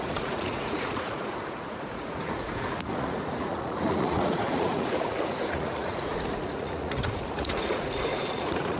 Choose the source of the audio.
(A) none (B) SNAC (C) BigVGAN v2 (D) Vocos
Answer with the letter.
D